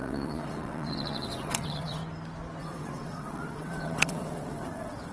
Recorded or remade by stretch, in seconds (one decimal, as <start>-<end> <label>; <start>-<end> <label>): 0.0-2.0 remade; 2.0-2.6 recorded; 2.6-5.1 remade